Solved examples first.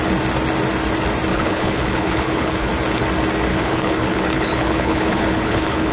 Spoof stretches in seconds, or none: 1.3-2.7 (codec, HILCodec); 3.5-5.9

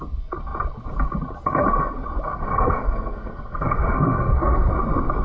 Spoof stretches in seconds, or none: 2.3-4.7 (codec, SNAC)